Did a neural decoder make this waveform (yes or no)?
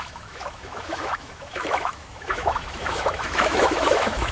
yes